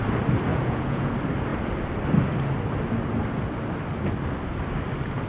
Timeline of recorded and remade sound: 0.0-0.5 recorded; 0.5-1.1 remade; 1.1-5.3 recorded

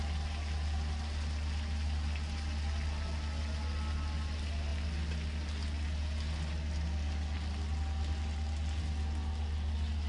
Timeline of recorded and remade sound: 0.0-10.1 recorded